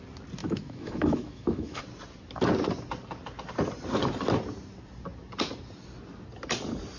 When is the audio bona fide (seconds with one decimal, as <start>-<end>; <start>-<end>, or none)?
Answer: 0.0-0.4; 1.8-7.0